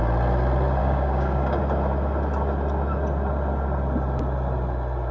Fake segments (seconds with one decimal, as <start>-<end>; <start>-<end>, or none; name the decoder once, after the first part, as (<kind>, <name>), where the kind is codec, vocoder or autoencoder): 0.8-1.6 (codec, DAC)